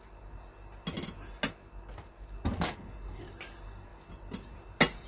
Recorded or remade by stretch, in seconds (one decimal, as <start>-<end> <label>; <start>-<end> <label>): 0.0-5.1 recorded